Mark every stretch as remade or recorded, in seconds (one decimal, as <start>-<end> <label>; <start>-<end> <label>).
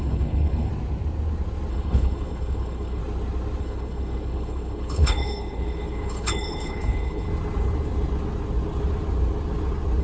0.0-0.7 remade; 0.7-1.7 recorded; 1.7-3.0 remade; 3.0-3.6 recorded; 3.6-7.3 remade; 7.3-10.0 recorded